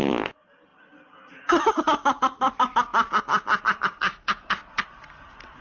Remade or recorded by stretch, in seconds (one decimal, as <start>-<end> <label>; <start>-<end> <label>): 0.0-5.6 recorded